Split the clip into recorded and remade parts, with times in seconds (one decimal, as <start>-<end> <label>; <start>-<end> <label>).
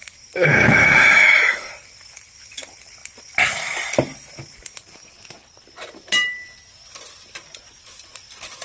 0.0-0.8 recorded; 0.8-1.7 remade; 1.7-8.6 recorded